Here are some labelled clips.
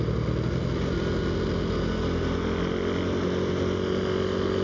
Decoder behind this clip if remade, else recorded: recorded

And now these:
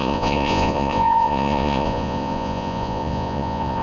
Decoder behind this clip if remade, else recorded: remade, vocoder, Vocos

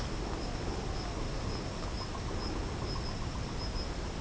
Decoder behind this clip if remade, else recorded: recorded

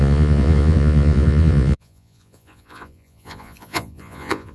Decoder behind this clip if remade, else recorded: remade, vocoder, Vocos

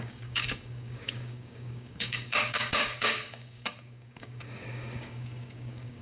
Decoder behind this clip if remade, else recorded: remade, codec, DAC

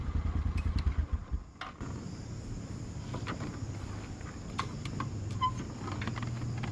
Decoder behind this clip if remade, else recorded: recorded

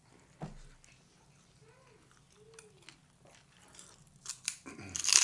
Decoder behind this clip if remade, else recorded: recorded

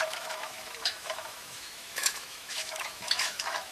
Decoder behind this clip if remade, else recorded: remade, autoencoder, DAC-VAE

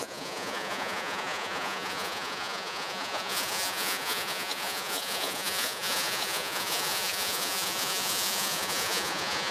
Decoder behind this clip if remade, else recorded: remade, vocoder, Vocos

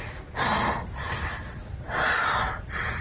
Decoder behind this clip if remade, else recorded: recorded